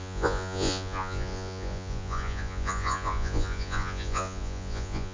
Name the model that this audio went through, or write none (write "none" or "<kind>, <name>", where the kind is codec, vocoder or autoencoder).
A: vocoder, Vocos